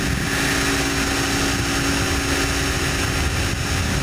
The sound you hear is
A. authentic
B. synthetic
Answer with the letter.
A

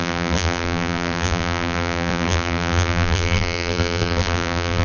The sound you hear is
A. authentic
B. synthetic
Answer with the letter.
B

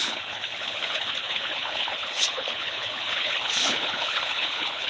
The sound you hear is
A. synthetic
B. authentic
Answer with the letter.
A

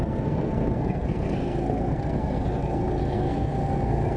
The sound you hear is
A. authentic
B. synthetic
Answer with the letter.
B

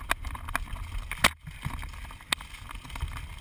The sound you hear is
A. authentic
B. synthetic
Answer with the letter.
A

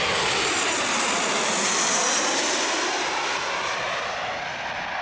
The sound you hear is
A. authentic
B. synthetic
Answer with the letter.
A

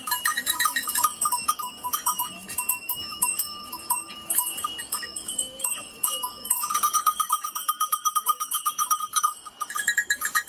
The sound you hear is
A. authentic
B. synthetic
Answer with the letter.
B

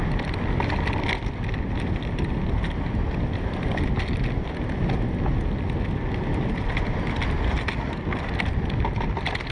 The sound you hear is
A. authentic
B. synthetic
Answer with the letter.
A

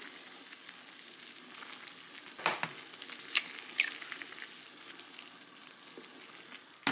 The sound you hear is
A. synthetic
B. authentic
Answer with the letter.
B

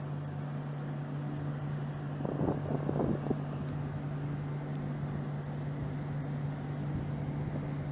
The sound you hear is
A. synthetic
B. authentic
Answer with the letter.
B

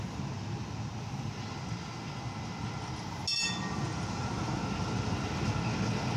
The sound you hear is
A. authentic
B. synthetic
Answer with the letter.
A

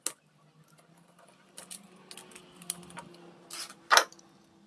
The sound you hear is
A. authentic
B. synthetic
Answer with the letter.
A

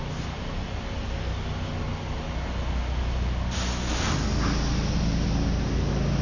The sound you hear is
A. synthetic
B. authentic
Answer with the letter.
B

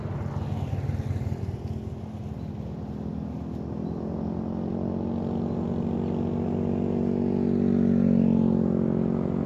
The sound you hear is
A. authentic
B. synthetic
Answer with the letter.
A